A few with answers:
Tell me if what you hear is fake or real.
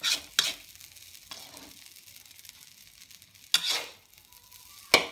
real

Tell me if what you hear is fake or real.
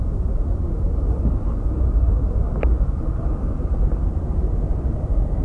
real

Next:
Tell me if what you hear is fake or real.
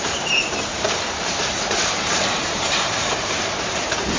fake